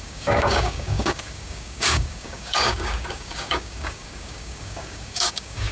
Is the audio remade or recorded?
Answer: remade